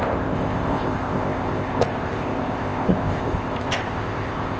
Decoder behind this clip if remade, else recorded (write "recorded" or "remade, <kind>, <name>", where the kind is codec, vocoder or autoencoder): remade, codec, ZipCodec